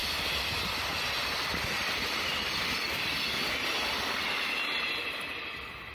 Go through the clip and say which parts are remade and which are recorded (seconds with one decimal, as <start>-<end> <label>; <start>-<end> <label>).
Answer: 0.0-5.9 recorded